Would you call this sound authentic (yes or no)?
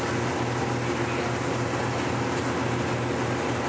yes